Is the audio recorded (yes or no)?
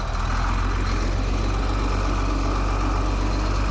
yes